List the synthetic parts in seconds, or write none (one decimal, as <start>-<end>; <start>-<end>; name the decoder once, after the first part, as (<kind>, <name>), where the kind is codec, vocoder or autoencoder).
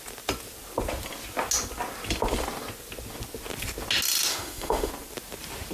4.3-4.9 (autoencoder, DAC-VAE)